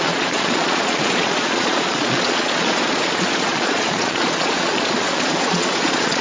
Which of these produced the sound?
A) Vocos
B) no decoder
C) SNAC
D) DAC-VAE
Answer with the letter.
A